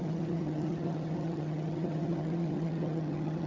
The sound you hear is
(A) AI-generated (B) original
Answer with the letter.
A